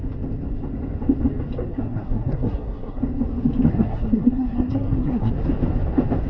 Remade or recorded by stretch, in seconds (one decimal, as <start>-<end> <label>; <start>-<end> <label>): 0.0-1.7 recorded; 1.7-3.0 remade; 3.0-3.7 recorded; 3.7-5.3 remade; 5.3-6.3 recorded